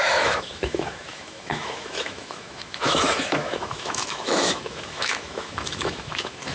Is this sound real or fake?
fake